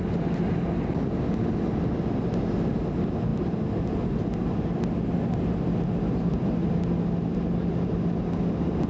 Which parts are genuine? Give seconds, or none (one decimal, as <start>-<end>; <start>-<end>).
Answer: 0.0-8.9